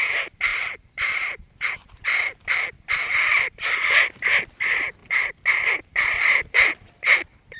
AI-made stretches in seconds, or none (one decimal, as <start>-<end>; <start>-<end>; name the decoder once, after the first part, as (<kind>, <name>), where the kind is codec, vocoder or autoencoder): 0.0-5.0 (vocoder, BigVGAN v2); 5.6-7.6